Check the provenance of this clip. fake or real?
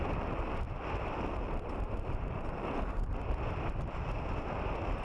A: real